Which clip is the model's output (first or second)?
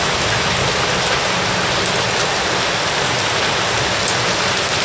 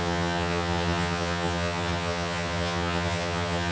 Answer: second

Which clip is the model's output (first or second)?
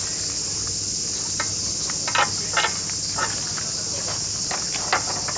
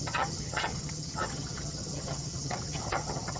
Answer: second